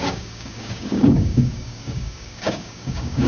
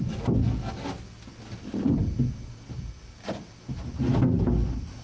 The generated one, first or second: first